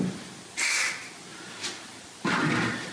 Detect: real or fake real